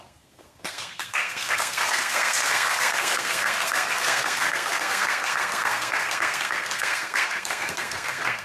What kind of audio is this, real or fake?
fake